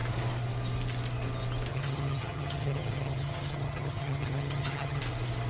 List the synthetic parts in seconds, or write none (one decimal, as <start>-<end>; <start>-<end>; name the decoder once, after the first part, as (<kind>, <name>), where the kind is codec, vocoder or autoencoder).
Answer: 1.7-5.0 (vocoder, HiFi-GAN)